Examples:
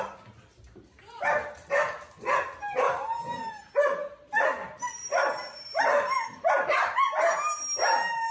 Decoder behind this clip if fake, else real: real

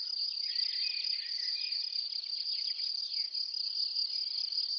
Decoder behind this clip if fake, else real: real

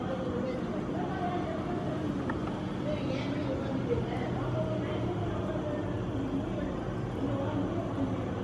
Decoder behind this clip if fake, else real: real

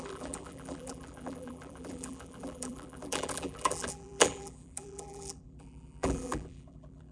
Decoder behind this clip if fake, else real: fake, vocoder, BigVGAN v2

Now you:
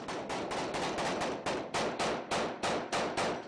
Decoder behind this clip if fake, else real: real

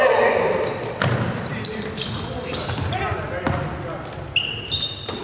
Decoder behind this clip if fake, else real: real